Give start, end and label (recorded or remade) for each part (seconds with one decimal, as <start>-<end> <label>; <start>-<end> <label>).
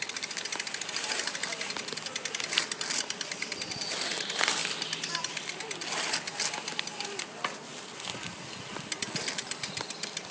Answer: 0.0-10.3 recorded